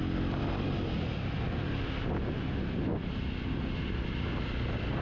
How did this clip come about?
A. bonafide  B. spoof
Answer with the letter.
A